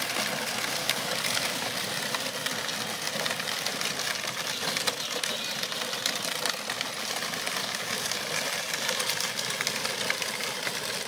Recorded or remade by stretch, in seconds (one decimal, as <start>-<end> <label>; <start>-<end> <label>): 0.0-0.8 recorded; 0.8-1.7 remade; 1.7-7.6 recorded; 7.6-8.1 remade; 8.1-11.1 recorded